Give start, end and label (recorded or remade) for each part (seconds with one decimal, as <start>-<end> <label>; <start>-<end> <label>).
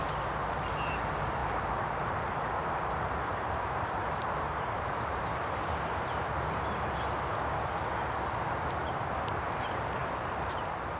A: 0.0-1.4 recorded; 1.4-5.6 remade; 5.6-8.8 recorded; 8.8-9.3 remade; 9.3-10.0 recorded; 10.0-10.6 remade; 10.6-11.0 recorded